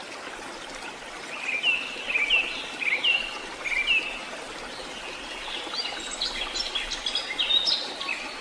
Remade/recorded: recorded